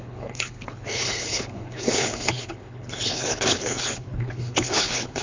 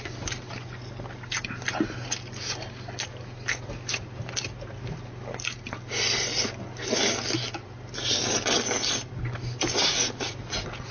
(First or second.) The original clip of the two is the second